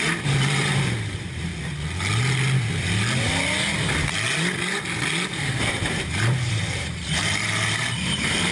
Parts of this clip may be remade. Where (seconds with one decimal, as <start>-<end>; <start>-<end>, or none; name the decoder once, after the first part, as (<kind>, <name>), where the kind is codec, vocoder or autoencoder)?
0.0-1.5 (vocoder, BigVGAN v2); 5.6-8.5